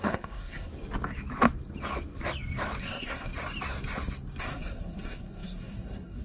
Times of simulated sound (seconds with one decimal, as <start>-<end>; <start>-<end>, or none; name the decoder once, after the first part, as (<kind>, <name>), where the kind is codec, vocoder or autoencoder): 0.0-0.7 (codec, SNAC); 2.8-3.3; 4.4-6.2